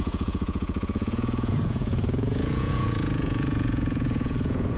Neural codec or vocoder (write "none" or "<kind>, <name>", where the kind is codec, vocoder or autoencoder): vocoder, Vocos